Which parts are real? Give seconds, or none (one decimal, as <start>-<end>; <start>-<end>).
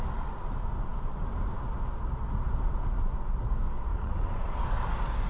0.0-3.9; 4.7-5.3